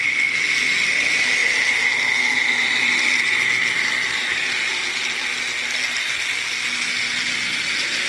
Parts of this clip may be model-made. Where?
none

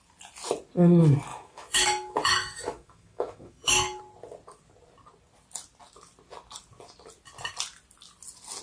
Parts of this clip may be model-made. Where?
1.3-4.0 (autoencoder, DAC-VAE)